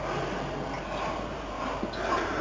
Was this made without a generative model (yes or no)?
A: yes